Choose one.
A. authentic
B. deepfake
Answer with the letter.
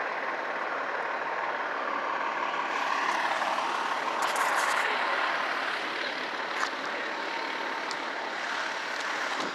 A